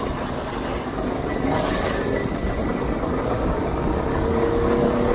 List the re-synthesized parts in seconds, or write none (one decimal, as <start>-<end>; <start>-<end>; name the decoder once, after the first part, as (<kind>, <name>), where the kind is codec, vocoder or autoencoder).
none